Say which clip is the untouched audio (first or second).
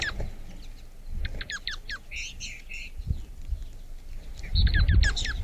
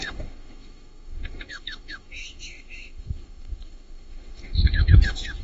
first